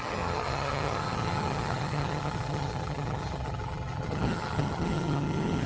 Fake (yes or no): yes